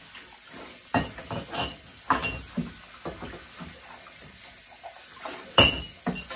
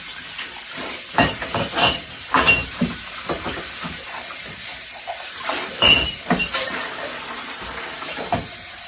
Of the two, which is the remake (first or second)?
second